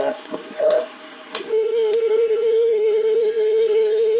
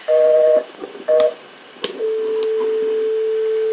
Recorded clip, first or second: second